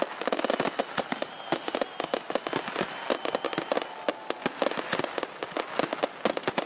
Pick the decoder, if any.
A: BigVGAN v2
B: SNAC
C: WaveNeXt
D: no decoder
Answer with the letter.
D